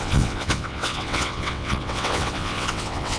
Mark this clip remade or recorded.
remade